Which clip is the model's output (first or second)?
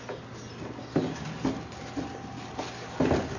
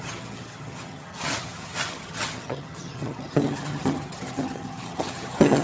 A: second